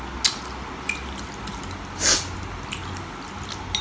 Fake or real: real